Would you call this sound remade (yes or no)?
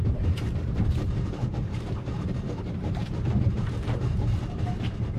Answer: yes